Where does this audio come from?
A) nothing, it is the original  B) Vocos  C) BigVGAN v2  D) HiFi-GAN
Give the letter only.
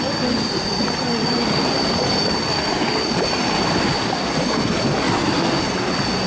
A